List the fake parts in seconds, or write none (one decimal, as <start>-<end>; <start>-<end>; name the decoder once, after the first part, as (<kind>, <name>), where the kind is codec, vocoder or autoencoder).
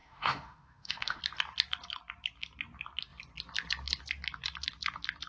0.0-1.2 (autoencoder, DAC-VAE)